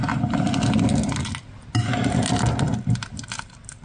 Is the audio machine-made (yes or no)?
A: no